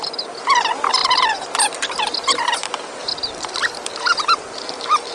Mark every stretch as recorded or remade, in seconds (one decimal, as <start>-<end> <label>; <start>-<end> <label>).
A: 0.0-5.1 recorded